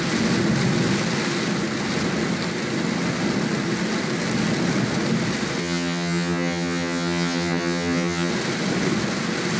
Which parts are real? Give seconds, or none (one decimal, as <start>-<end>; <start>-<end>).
0.0-5.6; 8.3-9.6

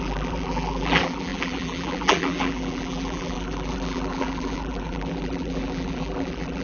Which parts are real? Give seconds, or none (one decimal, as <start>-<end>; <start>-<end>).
none

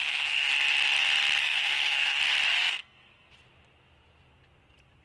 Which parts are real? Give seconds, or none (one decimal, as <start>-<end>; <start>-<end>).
0.5-1.4; 2.2-2.7; 3.3-5.0